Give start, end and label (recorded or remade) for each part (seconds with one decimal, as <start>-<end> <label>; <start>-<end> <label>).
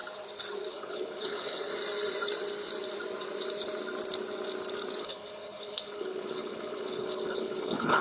0.0-0.7 recorded; 0.7-1.7 remade; 1.7-5.0 recorded; 5.0-8.0 remade